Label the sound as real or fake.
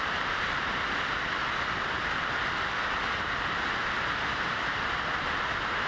real